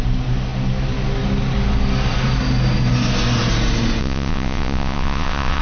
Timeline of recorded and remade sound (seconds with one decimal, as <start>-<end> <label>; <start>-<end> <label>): 0.0-4.0 recorded; 4.0-5.6 remade